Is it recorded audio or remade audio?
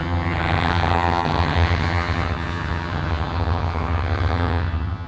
remade